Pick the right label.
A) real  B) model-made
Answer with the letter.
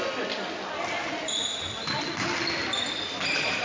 A